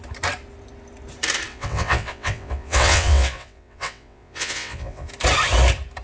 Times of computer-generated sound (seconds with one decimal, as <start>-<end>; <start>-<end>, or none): 1.5-5.1